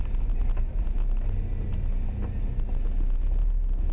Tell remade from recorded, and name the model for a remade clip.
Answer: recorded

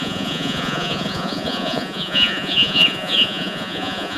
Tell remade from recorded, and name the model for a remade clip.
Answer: remade, vocoder, Vocos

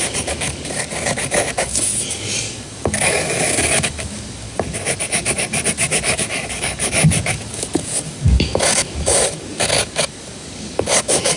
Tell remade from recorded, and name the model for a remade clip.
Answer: remade, codec, DAC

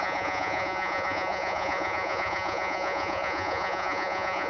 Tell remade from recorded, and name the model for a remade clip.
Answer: remade, vocoder, Vocos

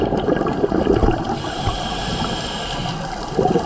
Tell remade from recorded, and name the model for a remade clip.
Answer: recorded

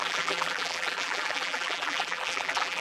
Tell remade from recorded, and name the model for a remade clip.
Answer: remade, vocoder, BigVGAN v2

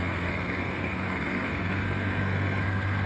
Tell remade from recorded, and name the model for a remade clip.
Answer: remade, codec, SNAC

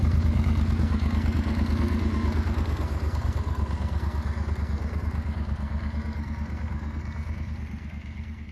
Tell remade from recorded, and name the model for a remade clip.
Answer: remade, codec, SNAC